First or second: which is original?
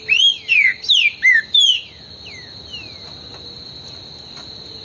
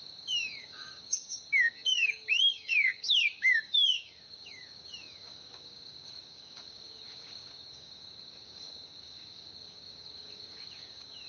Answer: first